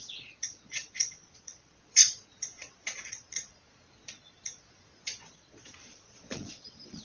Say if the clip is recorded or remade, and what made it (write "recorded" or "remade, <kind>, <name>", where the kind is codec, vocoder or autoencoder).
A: remade, vocoder, Vocos